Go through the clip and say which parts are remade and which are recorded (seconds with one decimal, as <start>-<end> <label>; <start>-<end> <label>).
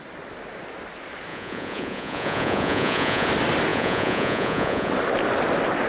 0.0-1.3 recorded; 1.3-3.3 remade; 3.3-3.7 recorded; 3.7-4.9 remade; 4.9-5.9 recorded